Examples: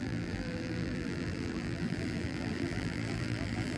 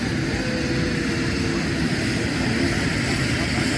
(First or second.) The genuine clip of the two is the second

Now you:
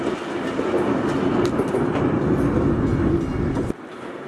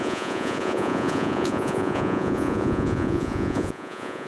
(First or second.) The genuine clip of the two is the first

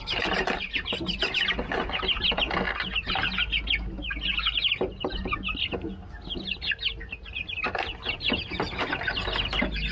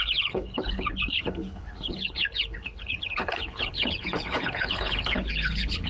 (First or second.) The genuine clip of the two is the first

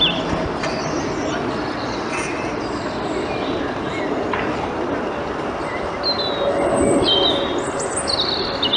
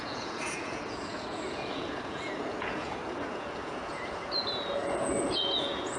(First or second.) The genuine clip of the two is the first